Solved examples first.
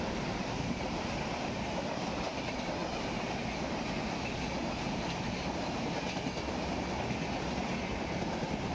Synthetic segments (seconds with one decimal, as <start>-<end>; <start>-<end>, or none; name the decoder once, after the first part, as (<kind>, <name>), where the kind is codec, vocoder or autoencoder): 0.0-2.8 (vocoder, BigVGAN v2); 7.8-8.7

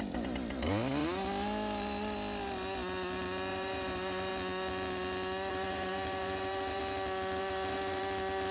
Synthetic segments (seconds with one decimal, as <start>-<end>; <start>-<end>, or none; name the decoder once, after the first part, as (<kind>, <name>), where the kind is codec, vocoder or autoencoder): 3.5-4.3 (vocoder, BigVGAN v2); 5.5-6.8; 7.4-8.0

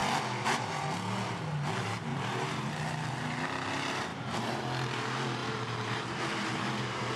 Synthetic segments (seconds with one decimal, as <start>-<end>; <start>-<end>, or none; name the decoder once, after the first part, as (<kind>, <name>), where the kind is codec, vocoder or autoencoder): 2.1-2.7 (vocoder, BigVGAN v2); 4.1-4.6; 5.4-6.2

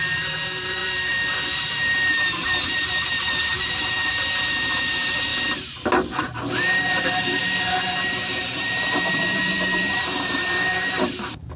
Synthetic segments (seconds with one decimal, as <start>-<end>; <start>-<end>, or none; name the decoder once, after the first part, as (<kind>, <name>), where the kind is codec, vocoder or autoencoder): 0.0-5.3 (vocoder, BigVGAN v2); 6.2-11.6